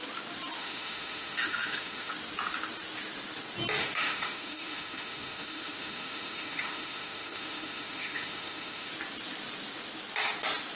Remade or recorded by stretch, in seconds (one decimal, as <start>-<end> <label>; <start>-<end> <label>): 0.0-0.6 recorded; 0.6-2.1 remade; 2.1-3.8 recorded; 3.8-8.9 remade; 8.9-10.8 recorded